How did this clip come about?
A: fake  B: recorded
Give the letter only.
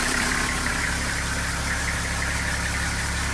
A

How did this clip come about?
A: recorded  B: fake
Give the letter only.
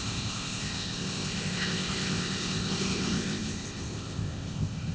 B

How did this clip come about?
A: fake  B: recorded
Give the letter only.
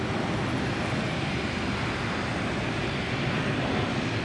A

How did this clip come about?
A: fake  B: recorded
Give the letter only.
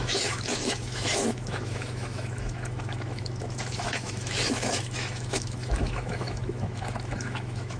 A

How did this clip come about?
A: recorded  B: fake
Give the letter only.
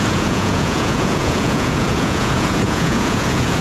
B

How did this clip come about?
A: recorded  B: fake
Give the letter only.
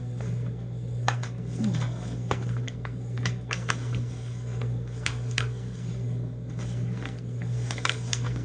B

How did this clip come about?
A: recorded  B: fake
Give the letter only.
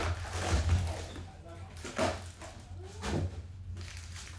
A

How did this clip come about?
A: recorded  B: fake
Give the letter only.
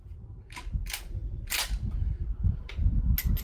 A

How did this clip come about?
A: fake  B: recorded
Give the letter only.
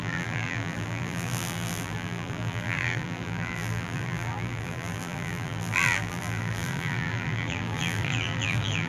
A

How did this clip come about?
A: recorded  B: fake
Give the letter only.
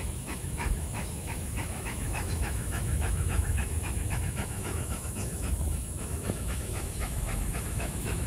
B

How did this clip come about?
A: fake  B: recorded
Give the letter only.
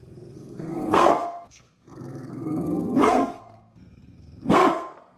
A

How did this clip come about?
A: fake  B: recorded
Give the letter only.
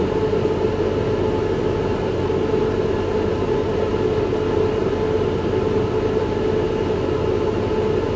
B